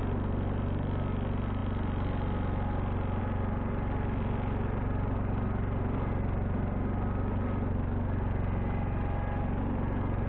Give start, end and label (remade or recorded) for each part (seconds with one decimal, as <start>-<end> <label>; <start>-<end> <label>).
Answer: 0.0-10.3 recorded